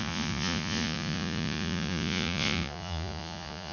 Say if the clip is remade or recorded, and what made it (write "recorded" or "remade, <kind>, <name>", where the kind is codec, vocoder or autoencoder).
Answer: remade, vocoder, Vocos